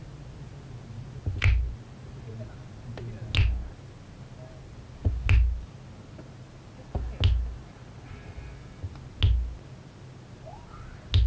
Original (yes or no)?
yes